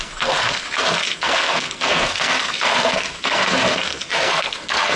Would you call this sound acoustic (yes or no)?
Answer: no